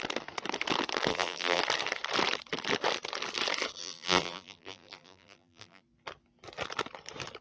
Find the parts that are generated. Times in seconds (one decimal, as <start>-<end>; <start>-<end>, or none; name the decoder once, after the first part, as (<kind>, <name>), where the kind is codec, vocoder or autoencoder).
1.1-1.6 (vocoder, BigVGAN v2); 3.8-5.8